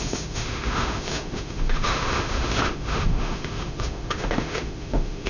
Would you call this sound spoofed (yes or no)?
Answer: yes